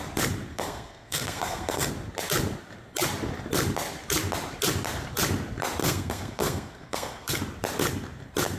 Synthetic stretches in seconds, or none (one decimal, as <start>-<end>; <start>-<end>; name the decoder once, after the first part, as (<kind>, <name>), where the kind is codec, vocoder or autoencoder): 0.5-1.9 (codec, SNAC); 5.8-7.4